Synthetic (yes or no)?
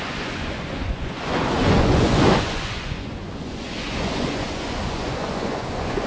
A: yes